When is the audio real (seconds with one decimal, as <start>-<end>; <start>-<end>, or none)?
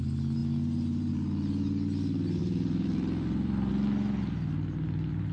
0.0-0.4; 1.1-2.4; 3.7-5.3